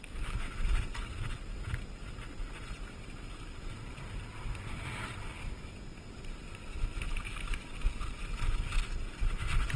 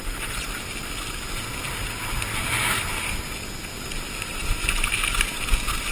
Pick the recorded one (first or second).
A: second